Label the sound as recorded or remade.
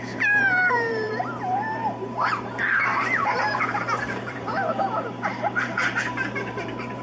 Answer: remade